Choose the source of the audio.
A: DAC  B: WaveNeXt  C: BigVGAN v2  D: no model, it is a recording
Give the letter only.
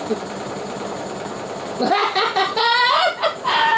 D